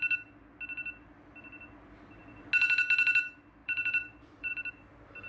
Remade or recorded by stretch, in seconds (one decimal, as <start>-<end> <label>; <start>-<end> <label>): 0.0-3.6 recorded; 3.6-4.5 remade; 4.5-5.3 recorded